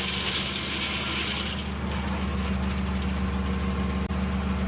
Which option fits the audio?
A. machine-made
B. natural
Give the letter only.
B